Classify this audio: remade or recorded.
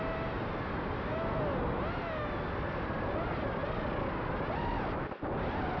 recorded